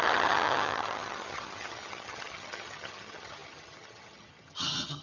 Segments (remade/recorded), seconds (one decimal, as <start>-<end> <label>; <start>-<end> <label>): 0.0-5.0 remade